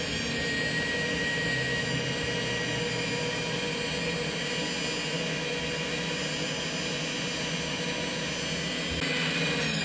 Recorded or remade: recorded